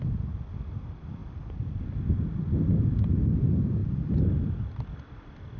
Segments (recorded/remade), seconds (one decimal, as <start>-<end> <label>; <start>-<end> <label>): 0.0-5.6 recorded